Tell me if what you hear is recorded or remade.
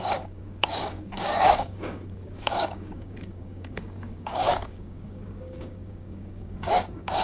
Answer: remade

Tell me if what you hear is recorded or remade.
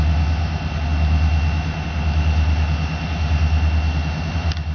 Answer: recorded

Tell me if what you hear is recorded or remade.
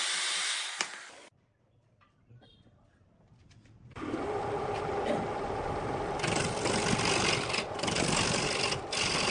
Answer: recorded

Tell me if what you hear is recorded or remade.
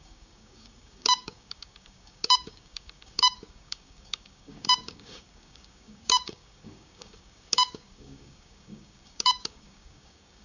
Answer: remade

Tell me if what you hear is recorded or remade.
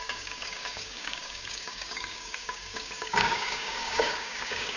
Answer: remade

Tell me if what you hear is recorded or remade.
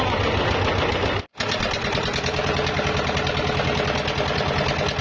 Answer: recorded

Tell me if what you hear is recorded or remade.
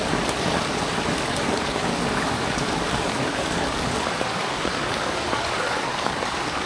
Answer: remade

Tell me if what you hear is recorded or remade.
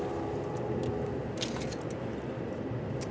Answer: recorded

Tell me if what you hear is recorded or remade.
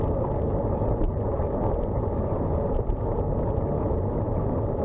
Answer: recorded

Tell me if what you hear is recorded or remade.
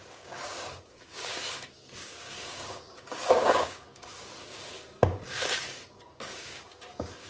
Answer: remade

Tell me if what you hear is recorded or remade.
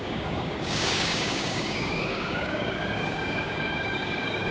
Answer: remade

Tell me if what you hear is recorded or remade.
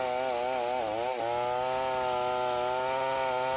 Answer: recorded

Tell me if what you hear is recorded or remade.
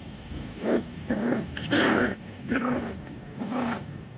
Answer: remade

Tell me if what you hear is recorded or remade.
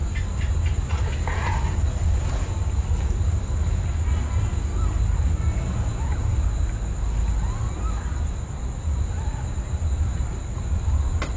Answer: recorded